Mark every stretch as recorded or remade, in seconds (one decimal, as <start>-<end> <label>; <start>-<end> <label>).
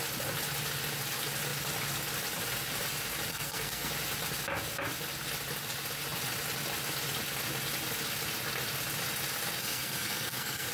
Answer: 0.0-3.3 recorded; 3.3-3.9 remade; 3.9-9.6 recorded; 9.6-10.7 remade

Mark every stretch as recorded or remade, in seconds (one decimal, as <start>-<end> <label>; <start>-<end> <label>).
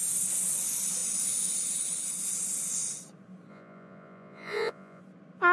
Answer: 0.0-3.5 recorded; 3.5-5.0 remade; 5.0-5.5 recorded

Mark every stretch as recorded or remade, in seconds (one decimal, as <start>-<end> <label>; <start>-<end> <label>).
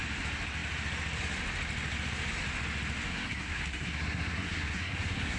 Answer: 0.0-3.1 recorded; 3.1-5.4 remade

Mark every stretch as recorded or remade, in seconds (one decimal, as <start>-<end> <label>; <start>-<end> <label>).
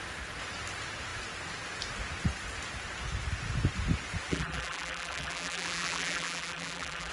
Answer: 0.0-4.3 recorded; 4.3-7.1 remade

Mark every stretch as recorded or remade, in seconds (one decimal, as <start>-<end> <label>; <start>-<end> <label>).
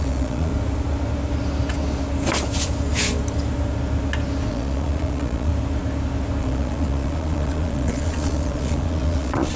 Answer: 0.0-0.5 remade; 0.5-4.5 recorded; 4.5-5.5 remade; 5.5-6.4 recorded; 6.4-9.6 remade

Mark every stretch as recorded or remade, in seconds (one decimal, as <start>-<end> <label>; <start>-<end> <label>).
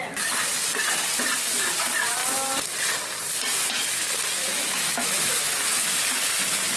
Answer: 0.0-4.4 recorded; 4.4-6.0 remade; 6.0-6.8 recorded